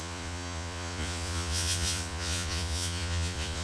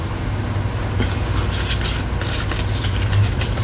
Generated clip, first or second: first